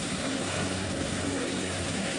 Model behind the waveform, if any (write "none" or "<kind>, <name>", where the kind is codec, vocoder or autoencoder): codec, SNAC